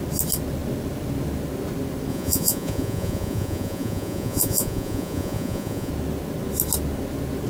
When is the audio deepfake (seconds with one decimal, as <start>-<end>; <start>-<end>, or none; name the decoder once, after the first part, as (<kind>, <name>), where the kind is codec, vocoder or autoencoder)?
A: 2.1-5.9 (vocoder, Vocos)